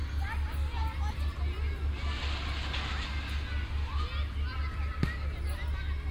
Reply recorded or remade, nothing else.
recorded